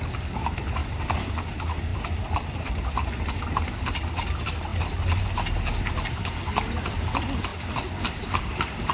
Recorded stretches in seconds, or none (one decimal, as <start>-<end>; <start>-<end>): 0.0-0.8; 1.3-1.9; 3.4-8.9